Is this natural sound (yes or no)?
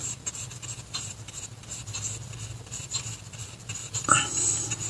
yes